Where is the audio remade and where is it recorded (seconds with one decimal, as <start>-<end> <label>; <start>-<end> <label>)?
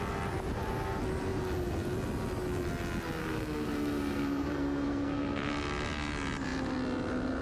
0.0-3.2 recorded; 3.2-5.5 remade; 5.5-7.4 recorded